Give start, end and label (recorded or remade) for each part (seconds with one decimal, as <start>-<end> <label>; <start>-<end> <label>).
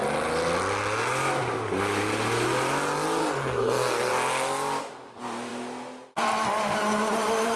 0.0-3.2 recorded; 3.2-4.1 remade; 4.1-7.6 recorded